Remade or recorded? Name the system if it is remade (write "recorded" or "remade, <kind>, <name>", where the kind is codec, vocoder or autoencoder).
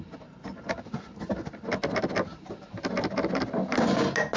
recorded